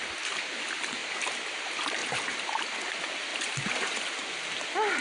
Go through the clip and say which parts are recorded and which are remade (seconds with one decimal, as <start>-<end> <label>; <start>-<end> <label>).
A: 0.0-1.0 recorded; 1.0-1.6 remade; 1.6-2.0 recorded; 2.0-2.6 remade; 2.6-3.3 recorded; 3.3-4.6 remade; 4.6-5.0 recorded